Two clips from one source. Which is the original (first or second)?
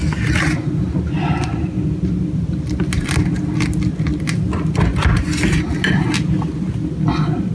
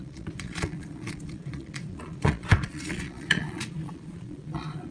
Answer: first